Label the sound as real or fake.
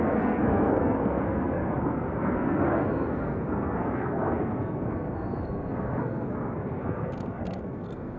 fake